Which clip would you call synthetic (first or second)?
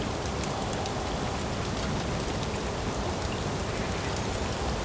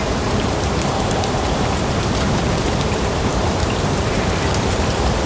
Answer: second